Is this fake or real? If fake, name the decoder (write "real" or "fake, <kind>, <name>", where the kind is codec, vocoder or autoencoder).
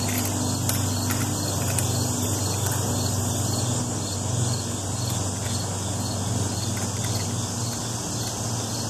real